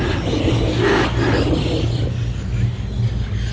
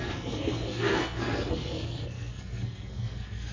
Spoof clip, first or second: second